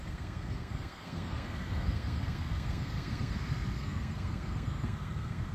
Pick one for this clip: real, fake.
fake